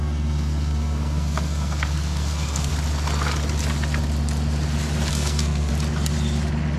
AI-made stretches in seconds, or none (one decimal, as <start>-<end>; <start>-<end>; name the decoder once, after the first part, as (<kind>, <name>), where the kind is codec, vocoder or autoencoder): 0.0-2.7 (codec, SNAC); 5.1-5.7